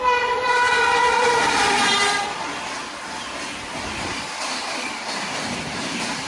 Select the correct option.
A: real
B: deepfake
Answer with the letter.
B